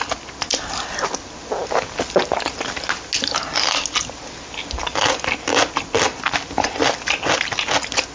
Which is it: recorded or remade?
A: recorded